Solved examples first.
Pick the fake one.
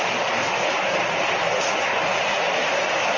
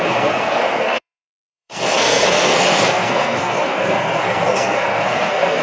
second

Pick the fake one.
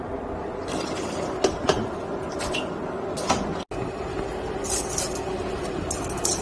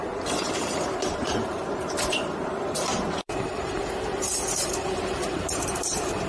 second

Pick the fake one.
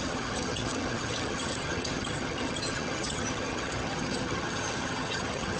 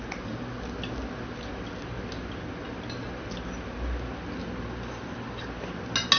first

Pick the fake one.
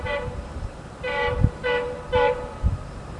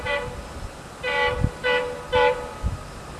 first